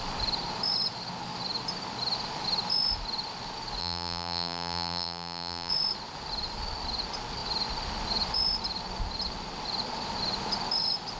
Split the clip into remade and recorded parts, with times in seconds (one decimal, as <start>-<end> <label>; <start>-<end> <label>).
0.0-3.8 recorded; 3.8-5.7 remade; 5.7-11.2 recorded